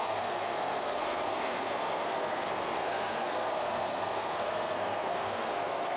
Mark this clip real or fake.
fake